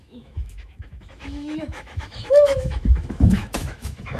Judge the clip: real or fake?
fake